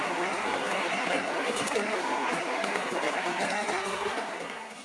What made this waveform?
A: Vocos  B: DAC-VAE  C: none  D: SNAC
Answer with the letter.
D